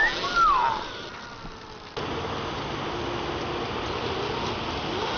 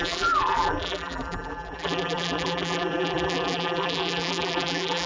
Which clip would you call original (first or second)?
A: first